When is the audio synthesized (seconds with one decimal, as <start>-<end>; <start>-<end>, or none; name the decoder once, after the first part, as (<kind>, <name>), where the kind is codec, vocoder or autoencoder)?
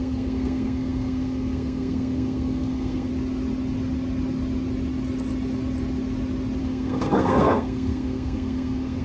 0.0-3.1 (codec, SNAC); 6.6-9.0